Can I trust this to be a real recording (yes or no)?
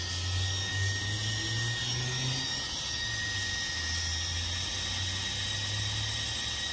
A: yes